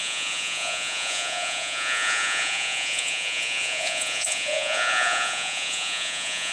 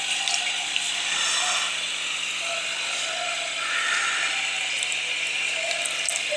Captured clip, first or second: second